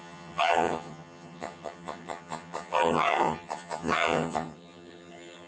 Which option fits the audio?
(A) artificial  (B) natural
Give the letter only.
A